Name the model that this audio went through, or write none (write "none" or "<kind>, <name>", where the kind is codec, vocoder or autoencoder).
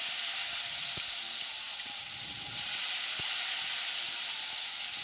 none